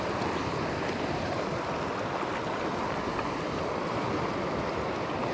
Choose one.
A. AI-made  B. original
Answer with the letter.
B